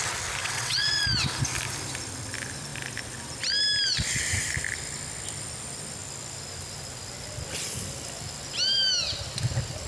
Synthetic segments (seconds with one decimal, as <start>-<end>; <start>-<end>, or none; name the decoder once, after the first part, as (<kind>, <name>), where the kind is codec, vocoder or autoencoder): 0.4-1.0 (vocoder, WaveNeXt)